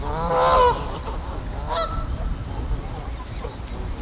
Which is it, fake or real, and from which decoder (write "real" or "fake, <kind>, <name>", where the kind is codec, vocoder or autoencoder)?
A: real